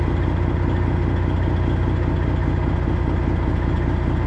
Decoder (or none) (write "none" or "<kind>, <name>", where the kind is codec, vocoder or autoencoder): none